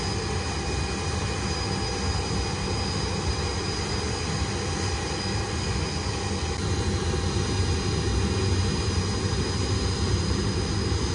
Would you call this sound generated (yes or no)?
no